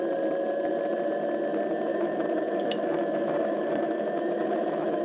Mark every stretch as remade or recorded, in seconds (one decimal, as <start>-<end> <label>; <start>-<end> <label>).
0.0-1.9 recorded; 1.9-5.0 remade